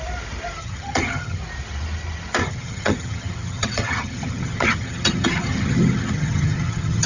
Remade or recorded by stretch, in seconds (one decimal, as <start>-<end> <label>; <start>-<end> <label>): 0.0-0.6 recorded; 0.6-1.4 remade; 1.4-2.4 recorded; 2.4-7.1 remade

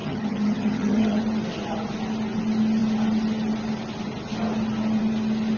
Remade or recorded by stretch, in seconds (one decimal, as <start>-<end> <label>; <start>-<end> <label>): 0.0-1.2 remade; 1.2-5.6 recorded

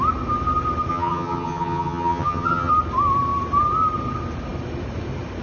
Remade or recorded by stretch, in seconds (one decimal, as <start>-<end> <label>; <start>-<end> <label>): 0.0-0.9 recorded; 0.9-2.7 remade; 2.7-5.4 recorded